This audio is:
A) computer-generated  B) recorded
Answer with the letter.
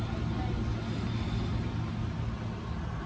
B